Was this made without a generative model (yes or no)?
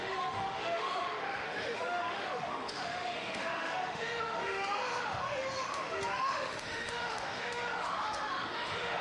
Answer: no